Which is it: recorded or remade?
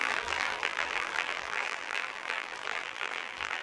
remade